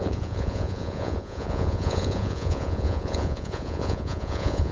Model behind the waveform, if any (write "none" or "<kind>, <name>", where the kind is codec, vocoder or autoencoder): vocoder, Vocos